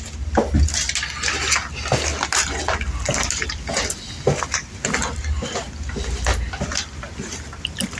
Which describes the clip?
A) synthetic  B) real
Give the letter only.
B